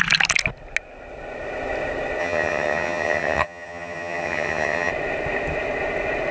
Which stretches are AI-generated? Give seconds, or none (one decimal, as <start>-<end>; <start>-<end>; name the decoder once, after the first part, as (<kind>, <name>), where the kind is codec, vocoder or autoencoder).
2.2-4.9 (vocoder, HiFi-GAN)